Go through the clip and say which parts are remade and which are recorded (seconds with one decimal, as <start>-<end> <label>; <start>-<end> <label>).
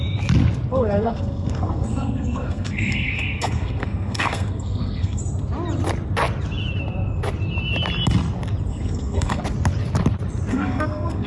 0.0-0.7 recorded; 0.7-5.2 remade; 5.2-8.7 recorded; 8.7-9.4 remade; 9.4-10.5 recorded; 10.5-11.3 remade